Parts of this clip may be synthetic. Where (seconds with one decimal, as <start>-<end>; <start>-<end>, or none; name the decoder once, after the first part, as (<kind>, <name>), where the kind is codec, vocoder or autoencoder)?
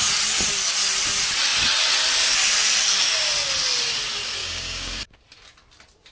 4.4-5.0 (codec, DAC)